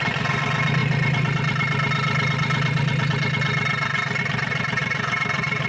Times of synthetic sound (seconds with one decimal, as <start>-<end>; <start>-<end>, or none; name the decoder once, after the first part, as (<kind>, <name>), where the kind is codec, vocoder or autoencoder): 4.8-5.7 (vocoder, BigVGAN v2)